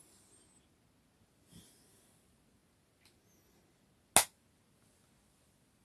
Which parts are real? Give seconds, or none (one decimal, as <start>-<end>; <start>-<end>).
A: 0.0-5.8

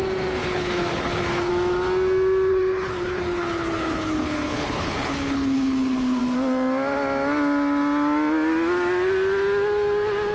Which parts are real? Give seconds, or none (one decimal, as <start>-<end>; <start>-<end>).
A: 0.0-0.4; 1.5-2.5; 6.2-10.3

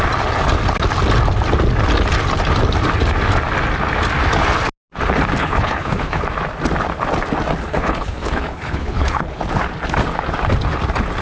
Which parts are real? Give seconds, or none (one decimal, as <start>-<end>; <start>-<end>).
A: 0.0-5.4; 6.2-7.7; 9.4-11.2

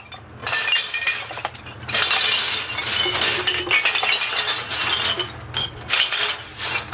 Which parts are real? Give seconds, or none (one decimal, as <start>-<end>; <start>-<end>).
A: 0.0-5.6; 6.2-6.9

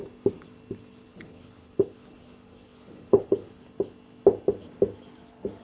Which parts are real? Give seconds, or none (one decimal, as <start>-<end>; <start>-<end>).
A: 0.0-1.1; 3.6-5.6

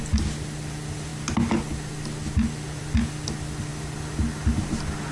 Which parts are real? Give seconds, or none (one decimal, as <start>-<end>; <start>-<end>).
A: 0.0-5.1

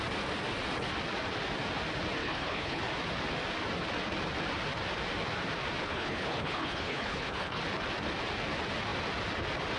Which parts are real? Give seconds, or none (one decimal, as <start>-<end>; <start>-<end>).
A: 0.0-2.2; 2.8-5.8; 7.6-9.8